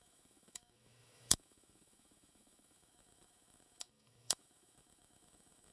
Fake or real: fake